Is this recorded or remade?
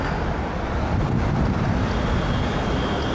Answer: recorded